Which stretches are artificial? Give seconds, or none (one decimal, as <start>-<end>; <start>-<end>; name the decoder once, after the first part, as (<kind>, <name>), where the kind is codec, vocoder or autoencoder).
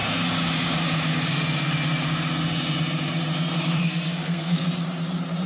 3.8-4.7 (codec, SNAC)